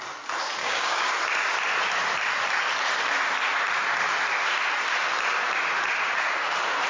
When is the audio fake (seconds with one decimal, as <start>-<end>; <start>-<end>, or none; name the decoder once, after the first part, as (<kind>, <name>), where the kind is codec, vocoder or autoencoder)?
0.6-1.1 (codec, DAC)